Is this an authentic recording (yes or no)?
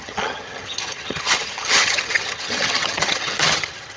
no